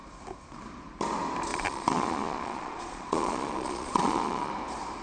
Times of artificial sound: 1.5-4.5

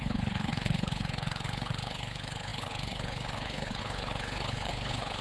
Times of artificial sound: 0.0-5.2